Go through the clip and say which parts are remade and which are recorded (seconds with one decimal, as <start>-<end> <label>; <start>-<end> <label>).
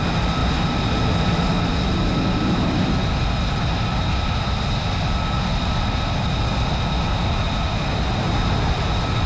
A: 0.0-9.3 recorded